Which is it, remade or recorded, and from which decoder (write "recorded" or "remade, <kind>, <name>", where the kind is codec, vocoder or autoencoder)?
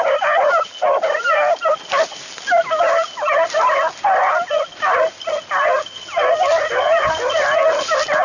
recorded